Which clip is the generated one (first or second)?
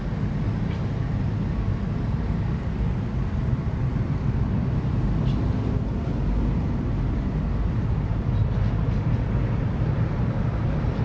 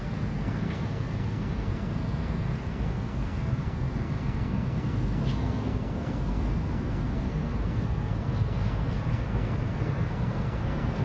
second